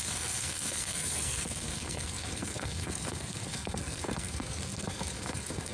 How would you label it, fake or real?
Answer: fake